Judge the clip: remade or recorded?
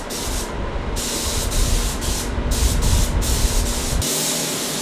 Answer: recorded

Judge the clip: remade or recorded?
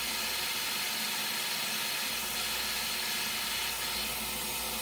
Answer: recorded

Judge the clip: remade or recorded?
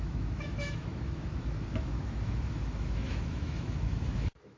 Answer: remade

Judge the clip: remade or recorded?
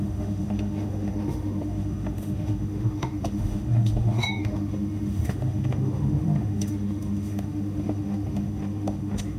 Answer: remade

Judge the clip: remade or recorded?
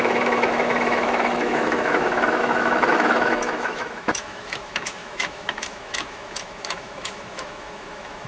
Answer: remade